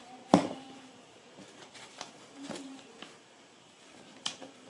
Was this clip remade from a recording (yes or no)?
yes